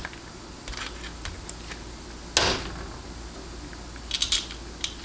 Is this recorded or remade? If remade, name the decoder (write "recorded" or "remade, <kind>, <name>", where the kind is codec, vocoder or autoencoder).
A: recorded